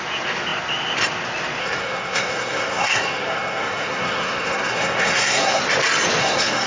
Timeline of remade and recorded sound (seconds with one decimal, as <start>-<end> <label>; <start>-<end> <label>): 0.0-1.6 recorded; 1.6-5.6 remade; 5.6-6.2 recorded; 6.2-6.7 remade